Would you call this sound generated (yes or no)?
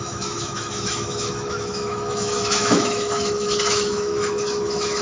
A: yes